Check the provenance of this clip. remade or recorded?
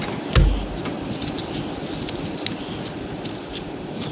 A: recorded